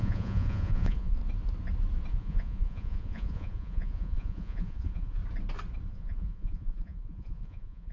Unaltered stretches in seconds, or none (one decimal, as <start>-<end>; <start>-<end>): 1.2-2.1; 5.2-5.9